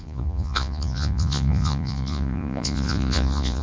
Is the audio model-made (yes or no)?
yes